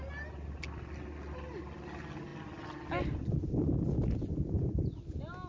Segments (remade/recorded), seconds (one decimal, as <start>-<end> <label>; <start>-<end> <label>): 0.0-5.5 recorded

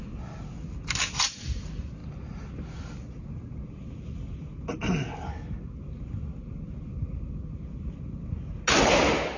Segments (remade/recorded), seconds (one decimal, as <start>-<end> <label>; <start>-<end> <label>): 0.0-9.4 recorded